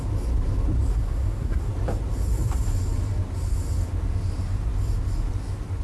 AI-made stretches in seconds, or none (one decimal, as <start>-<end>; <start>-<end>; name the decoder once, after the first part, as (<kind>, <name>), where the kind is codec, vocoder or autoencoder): 0.9-1.7 (codec, SNAC)